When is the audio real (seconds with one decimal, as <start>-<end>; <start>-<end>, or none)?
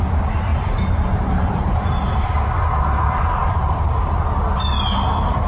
0.0-0.5; 2.1-3.4; 4.2-5.5